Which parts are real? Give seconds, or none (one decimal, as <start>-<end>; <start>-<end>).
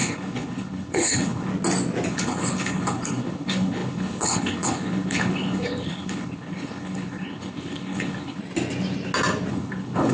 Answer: 1.5-2.1; 8.4-9.5